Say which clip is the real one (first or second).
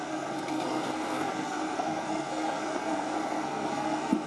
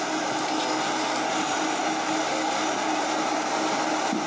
second